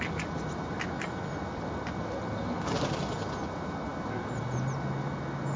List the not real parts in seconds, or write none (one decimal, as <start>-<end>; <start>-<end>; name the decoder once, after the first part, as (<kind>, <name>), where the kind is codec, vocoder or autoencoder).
none